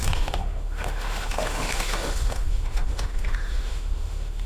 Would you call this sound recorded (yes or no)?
no